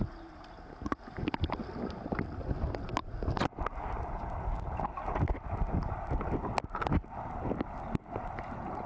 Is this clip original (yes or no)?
yes